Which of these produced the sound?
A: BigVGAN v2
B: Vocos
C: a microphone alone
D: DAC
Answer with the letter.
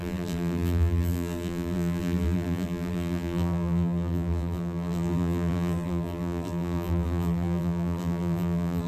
A